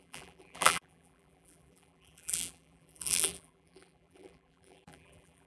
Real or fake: fake